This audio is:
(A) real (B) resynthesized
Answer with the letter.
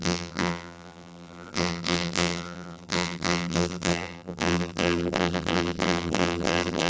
B